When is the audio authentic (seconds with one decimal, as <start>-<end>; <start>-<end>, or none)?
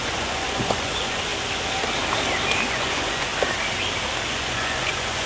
1.3-2.7; 3.3-4.3